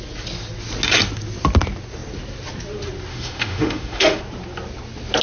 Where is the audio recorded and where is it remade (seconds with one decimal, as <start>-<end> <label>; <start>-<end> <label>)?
0.0-3.1 recorded; 3.1-4.2 remade; 4.2-5.2 recorded